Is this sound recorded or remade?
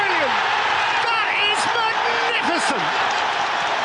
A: recorded